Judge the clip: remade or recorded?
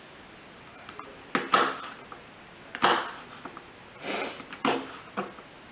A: recorded